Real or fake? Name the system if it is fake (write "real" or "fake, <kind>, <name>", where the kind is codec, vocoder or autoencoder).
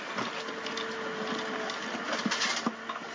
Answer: real